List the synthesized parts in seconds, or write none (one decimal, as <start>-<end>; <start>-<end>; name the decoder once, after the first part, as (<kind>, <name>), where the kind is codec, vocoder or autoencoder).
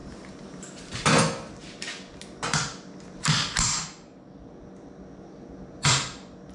0.0-0.6 (vocoder, BigVGAN v2)